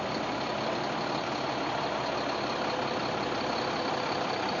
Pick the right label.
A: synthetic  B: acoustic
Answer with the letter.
B